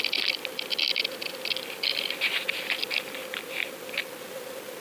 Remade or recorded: recorded